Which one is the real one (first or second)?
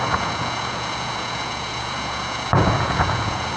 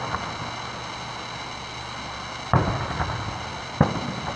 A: second